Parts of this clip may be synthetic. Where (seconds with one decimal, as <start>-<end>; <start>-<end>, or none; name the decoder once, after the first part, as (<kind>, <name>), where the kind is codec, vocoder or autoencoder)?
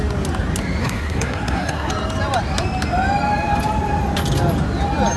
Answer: 0.8-1.9 (codec, SNAC)